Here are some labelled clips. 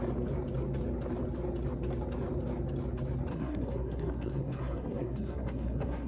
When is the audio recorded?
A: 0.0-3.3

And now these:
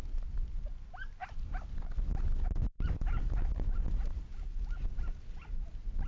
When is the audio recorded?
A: 0.0-6.1

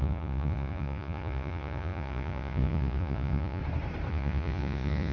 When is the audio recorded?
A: 3.6-4.1